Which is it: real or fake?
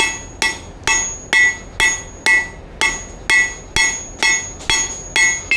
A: real